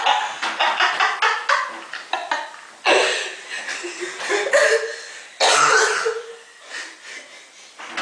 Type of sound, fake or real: real